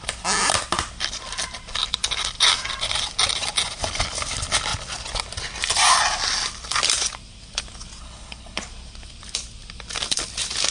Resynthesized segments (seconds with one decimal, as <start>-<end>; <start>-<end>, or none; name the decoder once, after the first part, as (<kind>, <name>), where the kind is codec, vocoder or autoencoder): 8.0-8.6 (codec, HILCodec)